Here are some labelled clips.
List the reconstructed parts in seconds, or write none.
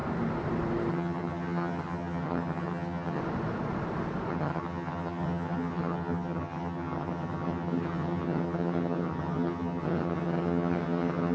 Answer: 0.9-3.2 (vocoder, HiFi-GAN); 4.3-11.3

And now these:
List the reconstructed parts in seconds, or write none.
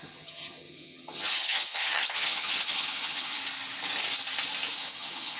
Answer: 0.0-3.4 (vocoder, HiFi-GAN); 4.8-5.4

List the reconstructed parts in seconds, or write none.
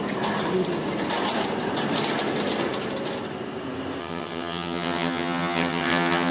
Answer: 4.0-6.3 (vocoder, HiFi-GAN)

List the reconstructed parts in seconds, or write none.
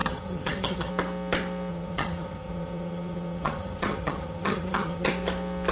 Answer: 0.0-0.9 (vocoder, HiFi-GAN); 1.7-5.1